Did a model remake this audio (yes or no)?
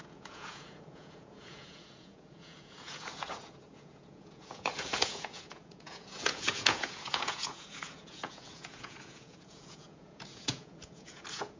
yes